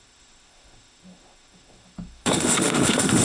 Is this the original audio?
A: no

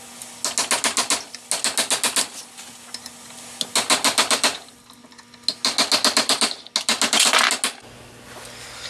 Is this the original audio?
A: yes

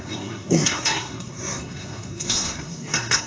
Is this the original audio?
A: no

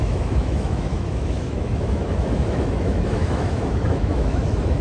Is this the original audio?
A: no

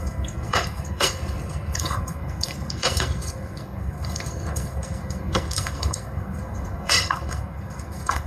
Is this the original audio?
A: no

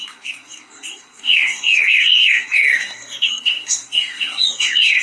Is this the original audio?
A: no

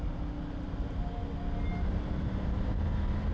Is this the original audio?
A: yes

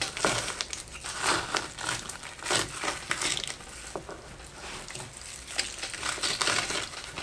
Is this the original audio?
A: yes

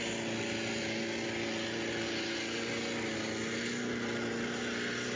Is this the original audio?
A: yes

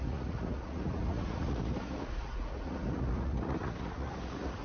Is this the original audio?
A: no